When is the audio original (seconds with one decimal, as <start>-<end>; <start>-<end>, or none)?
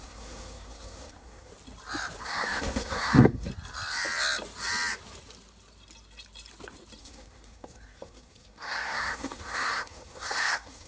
1.5-2.2; 3.5-7.0